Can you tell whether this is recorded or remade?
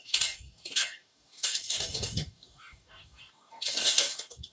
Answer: remade